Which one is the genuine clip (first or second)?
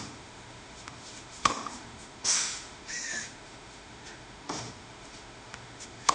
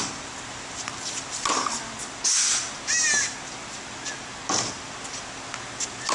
second